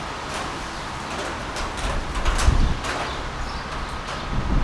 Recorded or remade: recorded